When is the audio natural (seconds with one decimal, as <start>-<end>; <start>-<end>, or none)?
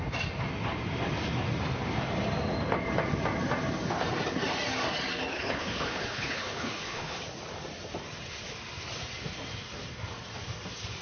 0.0-5.3; 7.2-11.0